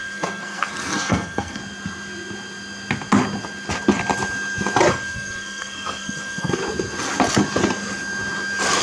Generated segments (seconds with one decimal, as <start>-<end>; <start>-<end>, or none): 0.0-1.6; 4.9-6.6